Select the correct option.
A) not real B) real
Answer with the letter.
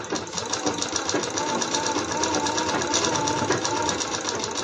B